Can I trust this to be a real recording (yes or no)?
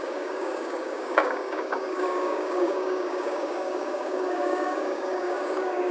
no